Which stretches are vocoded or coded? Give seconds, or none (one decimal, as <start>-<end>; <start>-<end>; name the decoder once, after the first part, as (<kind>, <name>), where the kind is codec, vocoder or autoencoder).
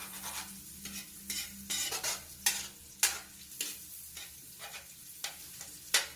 none